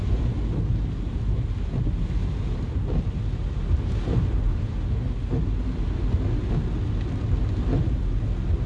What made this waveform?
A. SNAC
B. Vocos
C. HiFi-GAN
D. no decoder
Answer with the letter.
D